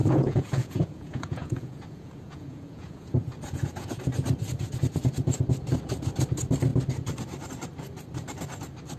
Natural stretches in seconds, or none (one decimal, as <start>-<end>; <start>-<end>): 4.0-9.0